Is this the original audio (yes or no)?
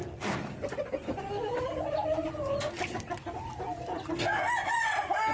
yes